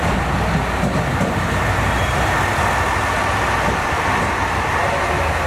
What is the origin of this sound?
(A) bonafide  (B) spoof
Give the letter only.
A